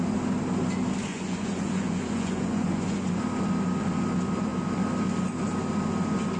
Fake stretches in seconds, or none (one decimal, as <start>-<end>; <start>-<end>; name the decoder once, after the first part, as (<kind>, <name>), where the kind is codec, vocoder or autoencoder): 1.1-3.1 (vocoder, Vocos)